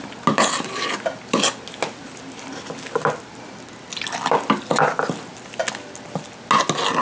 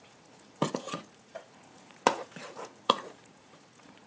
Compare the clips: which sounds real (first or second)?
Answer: first